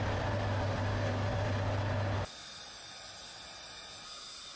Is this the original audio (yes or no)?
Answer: yes